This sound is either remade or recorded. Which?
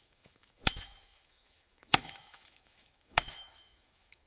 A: remade